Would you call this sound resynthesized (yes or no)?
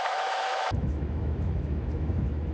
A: yes